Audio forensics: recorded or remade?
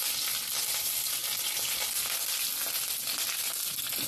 recorded